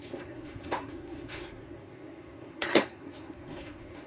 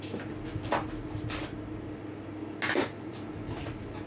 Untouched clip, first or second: second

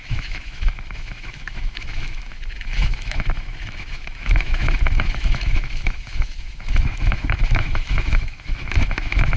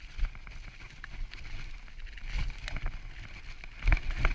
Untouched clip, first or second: second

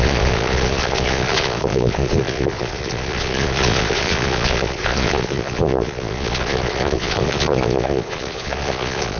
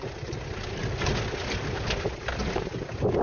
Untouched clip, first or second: second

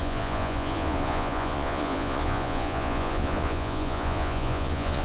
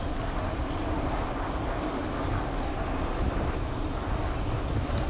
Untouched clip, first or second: second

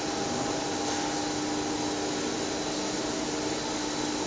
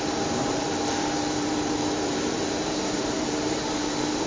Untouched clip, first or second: first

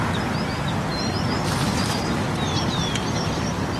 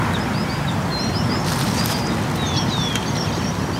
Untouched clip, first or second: second